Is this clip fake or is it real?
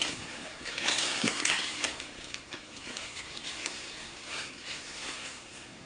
fake